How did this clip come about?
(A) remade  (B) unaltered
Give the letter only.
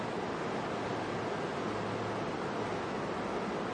B